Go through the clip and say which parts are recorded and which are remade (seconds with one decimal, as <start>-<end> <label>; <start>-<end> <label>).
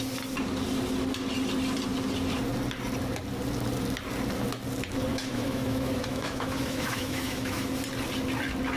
0.0-5.1 recorded; 5.1-7.7 remade; 7.7-8.8 recorded